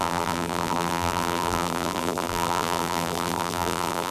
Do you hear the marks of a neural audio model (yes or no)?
yes